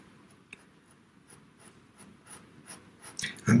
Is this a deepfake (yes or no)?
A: no